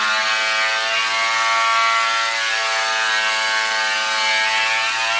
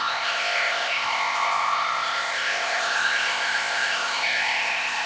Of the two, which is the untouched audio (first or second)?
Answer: first